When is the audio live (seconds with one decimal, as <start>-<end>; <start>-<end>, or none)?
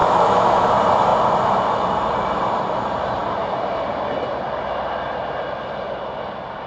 0.7-6.7